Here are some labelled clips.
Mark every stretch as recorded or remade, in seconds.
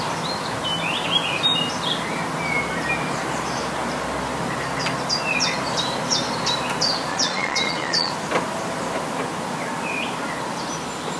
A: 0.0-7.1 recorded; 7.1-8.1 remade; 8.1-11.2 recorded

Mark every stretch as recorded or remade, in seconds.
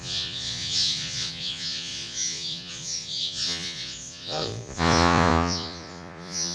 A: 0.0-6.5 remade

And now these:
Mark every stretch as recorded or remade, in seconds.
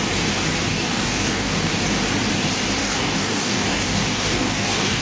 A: 0.0-0.7 recorded; 0.7-1.7 remade; 1.7-2.8 recorded; 2.8-5.0 remade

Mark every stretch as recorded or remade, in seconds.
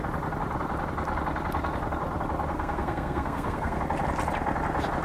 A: 0.0-2.5 recorded; 2.5-3.8 remade; 3.8-5.0 recorded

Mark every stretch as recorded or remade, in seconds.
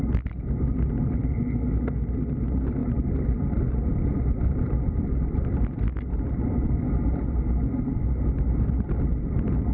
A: 0.0-2.8 recorded; 2.8-7.6 remade; 7.6-9.7 recorded